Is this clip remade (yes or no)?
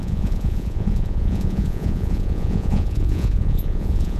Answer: yes